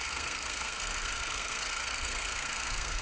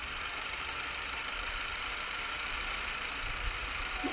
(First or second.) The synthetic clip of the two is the first